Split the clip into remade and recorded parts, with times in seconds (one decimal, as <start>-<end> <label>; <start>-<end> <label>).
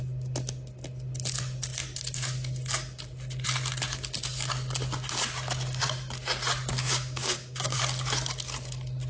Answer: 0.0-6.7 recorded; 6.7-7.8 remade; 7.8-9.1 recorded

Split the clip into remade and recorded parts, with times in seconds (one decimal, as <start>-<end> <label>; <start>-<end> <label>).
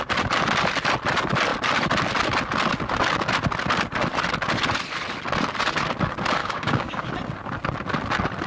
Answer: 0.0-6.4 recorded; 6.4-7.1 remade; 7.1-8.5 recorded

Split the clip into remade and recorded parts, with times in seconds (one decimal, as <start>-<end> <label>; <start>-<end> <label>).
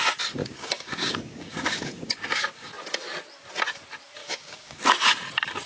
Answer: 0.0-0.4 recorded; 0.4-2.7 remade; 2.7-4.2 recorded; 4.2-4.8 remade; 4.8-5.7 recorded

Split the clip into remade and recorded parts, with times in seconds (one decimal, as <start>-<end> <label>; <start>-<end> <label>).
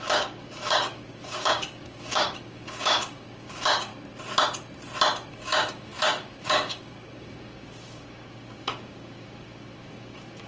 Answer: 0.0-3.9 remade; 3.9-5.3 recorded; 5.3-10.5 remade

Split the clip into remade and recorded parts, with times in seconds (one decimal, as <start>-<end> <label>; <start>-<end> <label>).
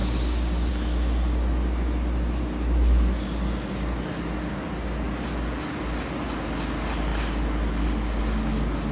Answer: 0.0-0.7 remade; 0.7-8.9 recorded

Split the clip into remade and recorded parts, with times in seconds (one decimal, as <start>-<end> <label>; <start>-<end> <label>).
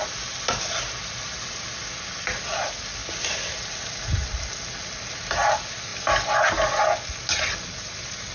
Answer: 0.0-8.3 recorded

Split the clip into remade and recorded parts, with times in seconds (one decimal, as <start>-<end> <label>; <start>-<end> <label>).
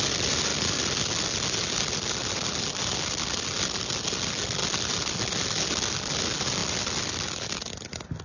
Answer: 0.0-8.2 recorded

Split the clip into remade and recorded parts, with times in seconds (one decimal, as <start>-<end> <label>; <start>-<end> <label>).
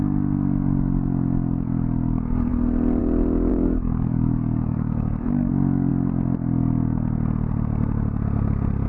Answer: 0.0-3.5 recorded; 3.5-5.5 remade; 5.5-8.9 recorded